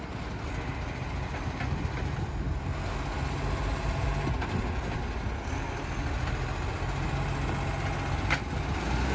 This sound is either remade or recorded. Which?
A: recorded